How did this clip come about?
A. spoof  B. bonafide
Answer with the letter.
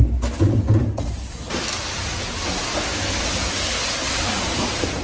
B